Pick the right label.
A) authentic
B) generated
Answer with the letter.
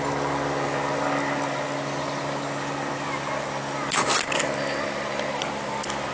A